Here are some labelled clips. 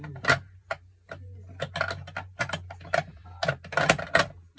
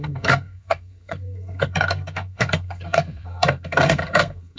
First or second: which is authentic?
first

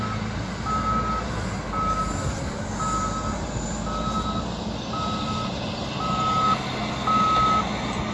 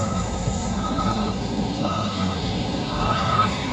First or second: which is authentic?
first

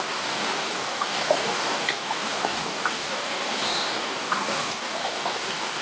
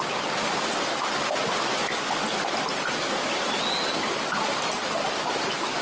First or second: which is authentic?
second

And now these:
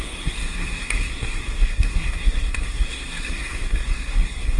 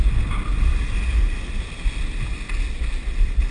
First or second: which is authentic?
second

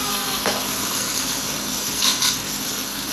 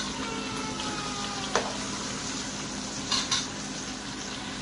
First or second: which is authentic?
second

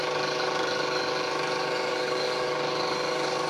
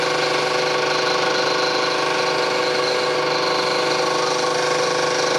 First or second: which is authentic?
second